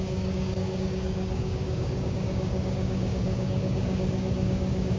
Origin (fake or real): fake